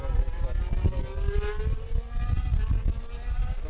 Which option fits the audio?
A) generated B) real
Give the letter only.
B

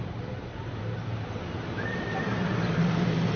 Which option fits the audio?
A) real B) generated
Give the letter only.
B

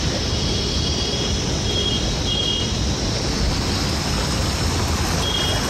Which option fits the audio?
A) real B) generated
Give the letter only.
A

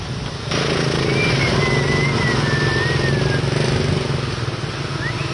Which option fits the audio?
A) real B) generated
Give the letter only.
A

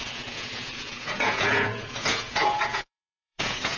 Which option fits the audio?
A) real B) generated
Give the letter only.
B